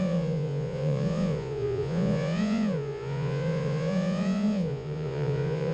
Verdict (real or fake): fake